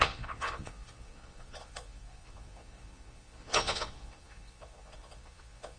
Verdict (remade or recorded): remade